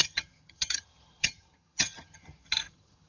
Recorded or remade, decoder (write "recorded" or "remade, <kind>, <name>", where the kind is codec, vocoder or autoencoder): remade, vocoder, HiFi-GAN